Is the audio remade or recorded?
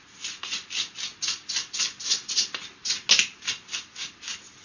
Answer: recorded